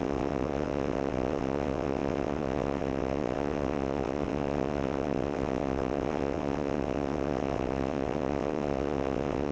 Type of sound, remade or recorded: remade